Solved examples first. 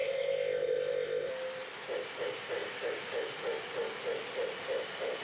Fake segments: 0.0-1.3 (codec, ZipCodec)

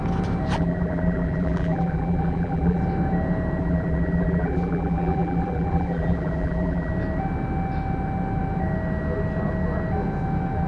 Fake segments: 0.6-2.8 (vocoder, BigVGAN v2); 3.6-6.9